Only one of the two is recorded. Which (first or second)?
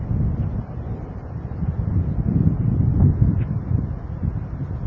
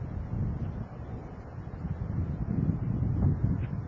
second